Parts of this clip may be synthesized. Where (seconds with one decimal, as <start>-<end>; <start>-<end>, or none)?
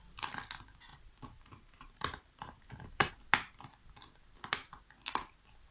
0.9-3.1